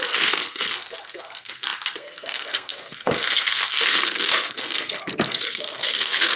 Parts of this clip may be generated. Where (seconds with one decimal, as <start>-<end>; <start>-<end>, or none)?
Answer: 0.0-6.4